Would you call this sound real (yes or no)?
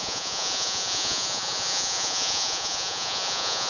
no